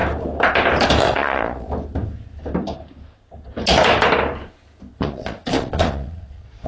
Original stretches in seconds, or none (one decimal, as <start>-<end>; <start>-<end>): 0.0-1.0; 1.7-4.9